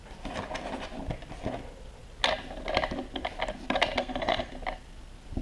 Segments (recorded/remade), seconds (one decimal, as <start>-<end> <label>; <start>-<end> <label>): 0.0-4.0 recorded; 4.0-4.5 remade; 4.5-5.4 recorded